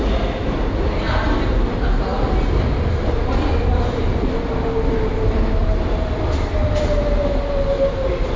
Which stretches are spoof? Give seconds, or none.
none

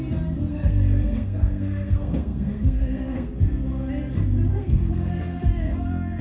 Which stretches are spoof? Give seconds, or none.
0.5-3.3; 4.5-6.2

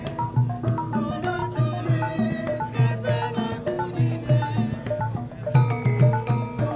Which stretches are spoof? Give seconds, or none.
none

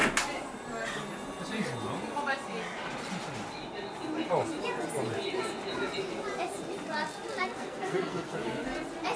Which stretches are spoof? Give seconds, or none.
7.4-8.7

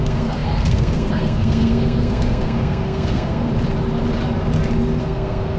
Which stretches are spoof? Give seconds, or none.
0.0-3.5; 5.0-5.6

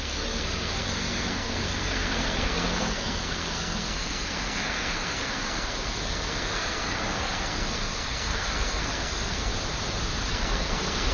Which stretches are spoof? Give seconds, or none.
0.0-9.5; 10.3-11.1

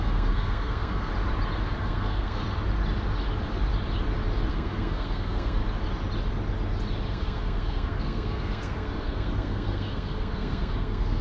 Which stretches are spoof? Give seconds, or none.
0.0-1.1; 1.8-2.4; 4.5-5.6; 7.1-11.2